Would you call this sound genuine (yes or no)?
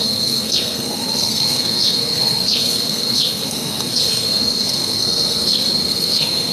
no